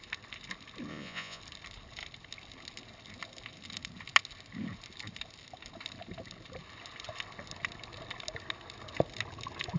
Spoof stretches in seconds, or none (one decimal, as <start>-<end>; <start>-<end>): 0.9-1.4